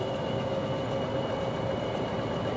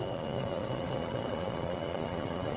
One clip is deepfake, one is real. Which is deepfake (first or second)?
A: second